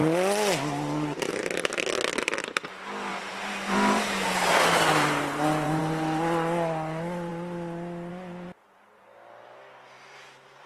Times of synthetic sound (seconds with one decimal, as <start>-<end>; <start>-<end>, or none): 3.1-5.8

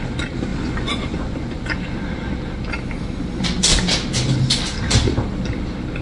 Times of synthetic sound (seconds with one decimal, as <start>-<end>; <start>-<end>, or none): 0.5-1.6

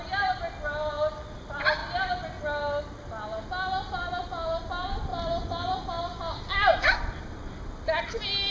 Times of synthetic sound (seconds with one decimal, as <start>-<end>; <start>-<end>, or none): none

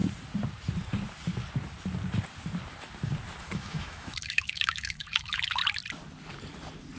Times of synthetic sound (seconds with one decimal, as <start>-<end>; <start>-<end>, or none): 3.4-5.6